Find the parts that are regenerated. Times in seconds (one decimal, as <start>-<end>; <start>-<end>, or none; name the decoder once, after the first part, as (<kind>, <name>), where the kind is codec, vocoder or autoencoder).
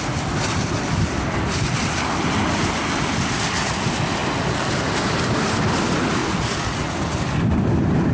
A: 6.2-6.8 (vocoder, Vocos)